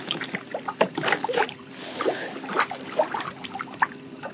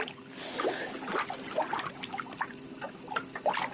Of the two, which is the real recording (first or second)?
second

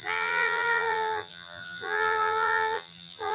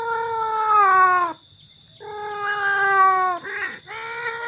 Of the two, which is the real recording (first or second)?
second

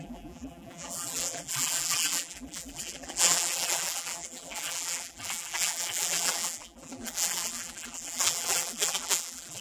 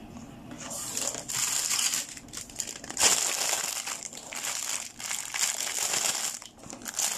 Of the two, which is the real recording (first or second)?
second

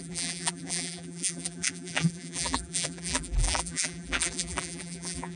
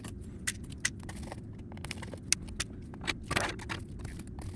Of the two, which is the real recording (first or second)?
second